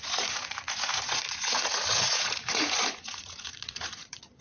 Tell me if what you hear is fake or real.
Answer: fake